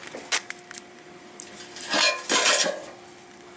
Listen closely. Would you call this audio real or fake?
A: real